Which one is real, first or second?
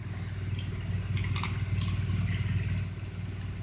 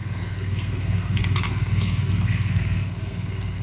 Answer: first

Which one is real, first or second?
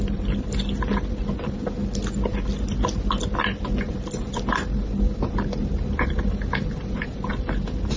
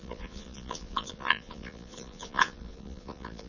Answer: first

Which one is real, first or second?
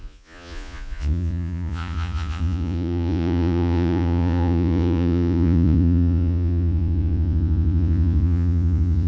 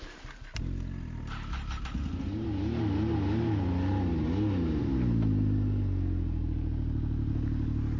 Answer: second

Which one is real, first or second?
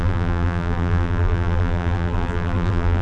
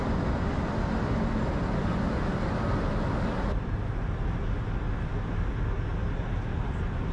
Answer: second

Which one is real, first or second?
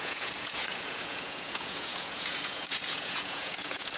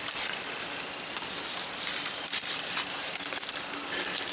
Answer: second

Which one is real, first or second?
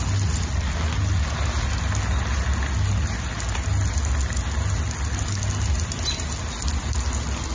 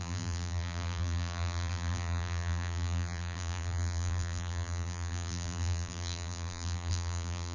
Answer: first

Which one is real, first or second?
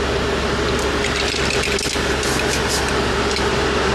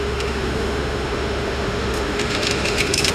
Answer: first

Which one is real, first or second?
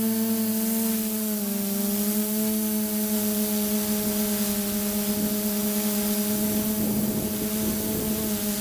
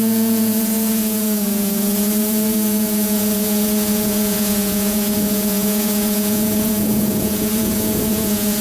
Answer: first